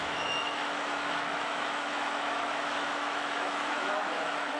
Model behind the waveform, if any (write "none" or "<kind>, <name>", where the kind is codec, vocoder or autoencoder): autoencoder, DAC-VAE